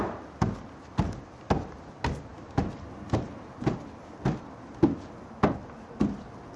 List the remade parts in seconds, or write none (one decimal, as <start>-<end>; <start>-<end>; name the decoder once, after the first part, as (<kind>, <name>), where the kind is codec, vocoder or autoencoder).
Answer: none